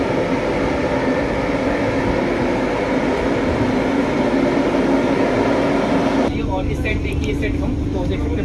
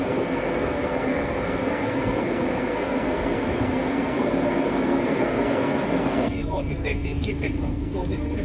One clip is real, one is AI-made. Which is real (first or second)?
first